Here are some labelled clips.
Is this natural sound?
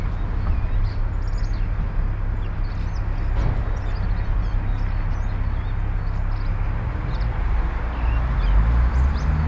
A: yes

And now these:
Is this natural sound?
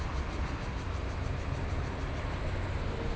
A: yes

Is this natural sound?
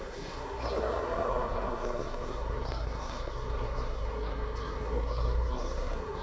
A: no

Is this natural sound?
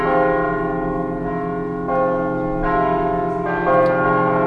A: yes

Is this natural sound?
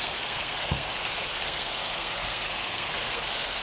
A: no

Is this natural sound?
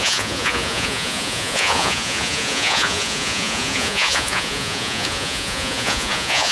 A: no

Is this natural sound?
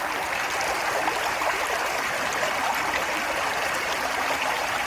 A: yes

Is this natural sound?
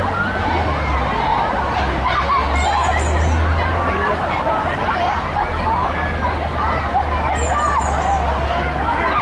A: yes